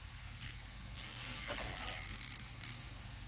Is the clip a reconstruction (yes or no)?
yes